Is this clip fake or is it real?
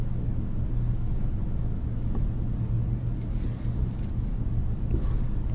real